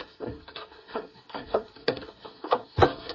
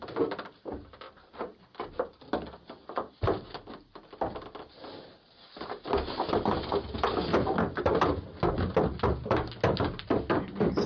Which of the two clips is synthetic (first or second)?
first